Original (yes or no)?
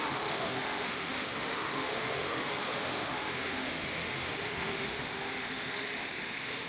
no